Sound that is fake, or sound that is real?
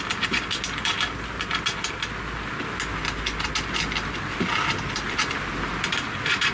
real